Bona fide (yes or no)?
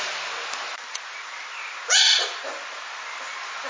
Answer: yes